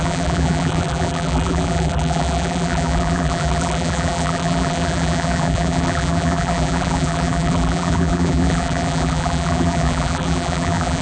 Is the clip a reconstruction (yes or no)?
yes